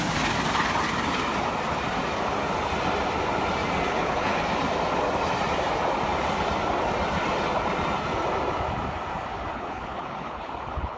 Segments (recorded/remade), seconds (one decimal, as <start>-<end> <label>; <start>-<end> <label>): 0.0-3.9 recorded; 3.9-4.4 remade; 4.4-9.5 recorded; 9.5-11.0 remade

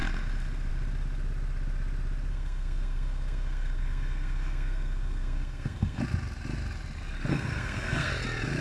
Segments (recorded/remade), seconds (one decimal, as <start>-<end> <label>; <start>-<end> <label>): 0.0-2.3 recorded; 2.3-6.0 remade; 6.0-7.3 recorded; 7.3-8.1 remade; 8.1-8.6 recorded

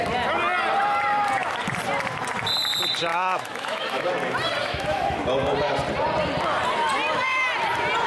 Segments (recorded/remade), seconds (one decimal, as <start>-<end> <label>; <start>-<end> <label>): 0.0-3.1 recorded; 3.1-4.1 remade; 4.1-4.6 recorded; 4.6-5.2 remade; 5.2-8.1 recorded

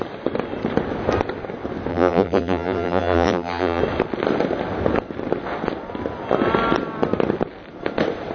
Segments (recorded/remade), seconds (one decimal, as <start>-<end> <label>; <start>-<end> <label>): 0.0-1.9 recorded; 1.9-3.8 remade; 3.8-8.3 recorded

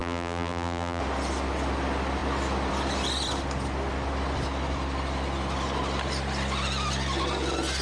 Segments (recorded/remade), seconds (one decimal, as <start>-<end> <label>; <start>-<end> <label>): 0.0-1.0 remade; 1.0-7.8 recorded

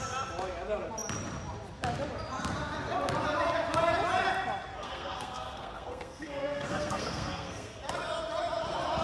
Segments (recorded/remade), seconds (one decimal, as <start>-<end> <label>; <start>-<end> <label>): 0.0-4.7 recorded; 4.7-7.8 remade; 7.8-9.0 recorded